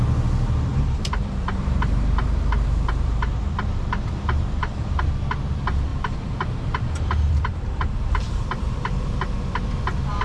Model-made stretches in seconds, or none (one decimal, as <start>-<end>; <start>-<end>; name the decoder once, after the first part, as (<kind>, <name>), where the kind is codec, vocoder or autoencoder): 0.7-5.0 (vocoder, BigVGAN v2); 5.9-9.6